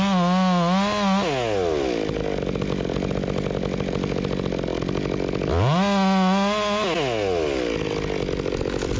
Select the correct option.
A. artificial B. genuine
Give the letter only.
B